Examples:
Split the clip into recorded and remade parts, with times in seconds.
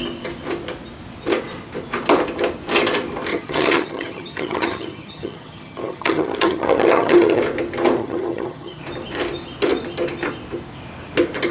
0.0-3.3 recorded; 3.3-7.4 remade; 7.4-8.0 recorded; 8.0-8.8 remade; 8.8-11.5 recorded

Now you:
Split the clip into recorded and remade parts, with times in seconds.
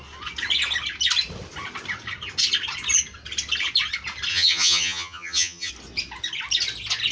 0.0-4.3 recorded; 4.3-5.7 remade; 5.7-7.1 recorded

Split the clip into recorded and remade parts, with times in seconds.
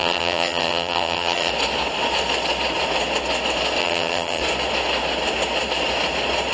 0.0-1.5 remade; 1.5-3.8 recorded; 3.8-4.4 remade; 4.4-6.5 recorded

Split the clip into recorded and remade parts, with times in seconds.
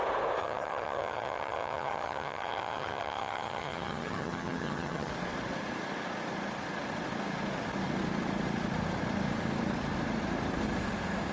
0.0-0.4 recorded; 0.4-5.1 remade; 5.1-11.3 recorded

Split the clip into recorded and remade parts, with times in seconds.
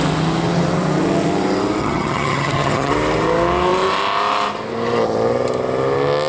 0.0-1.8 recorded; 1.8-2.9 remade; 2.9-6.3 recorded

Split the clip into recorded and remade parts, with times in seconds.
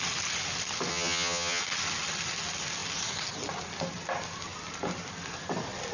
0.0-0.9 recorded; 0.9-1.6 remade; 1.6-5.9 recorded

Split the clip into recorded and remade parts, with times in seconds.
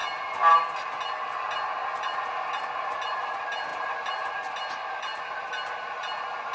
0.0-6.5 recorded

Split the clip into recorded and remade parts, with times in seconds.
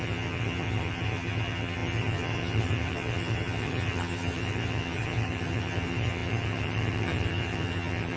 0.0-8.2 remade